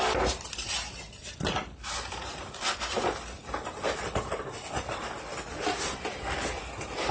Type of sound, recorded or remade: recorded